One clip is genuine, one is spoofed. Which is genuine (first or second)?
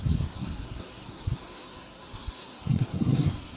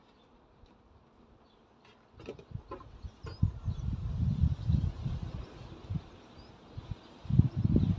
second